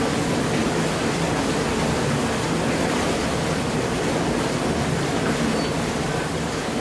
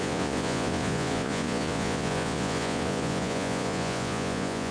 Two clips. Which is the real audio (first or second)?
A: first